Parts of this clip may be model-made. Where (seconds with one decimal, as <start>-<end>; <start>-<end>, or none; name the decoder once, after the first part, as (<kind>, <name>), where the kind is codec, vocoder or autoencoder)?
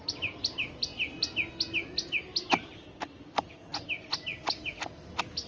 none